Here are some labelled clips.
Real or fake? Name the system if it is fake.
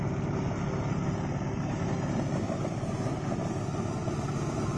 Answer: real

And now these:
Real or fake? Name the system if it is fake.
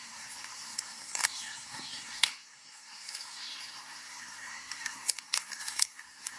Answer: fake, codec, SNAC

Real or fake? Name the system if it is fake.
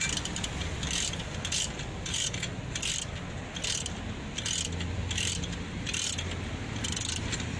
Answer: real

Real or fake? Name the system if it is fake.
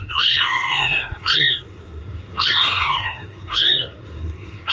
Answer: fake, codec, SNAC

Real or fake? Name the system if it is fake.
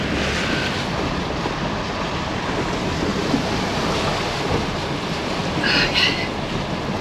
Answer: real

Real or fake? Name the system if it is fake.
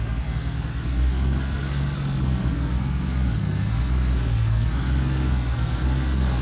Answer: fake, codec, SNAC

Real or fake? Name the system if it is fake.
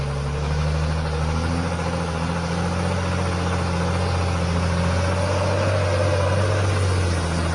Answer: real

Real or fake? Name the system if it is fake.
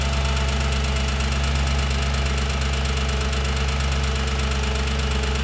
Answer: real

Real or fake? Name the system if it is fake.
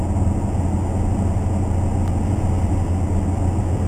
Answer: real